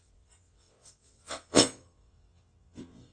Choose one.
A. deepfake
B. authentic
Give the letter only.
A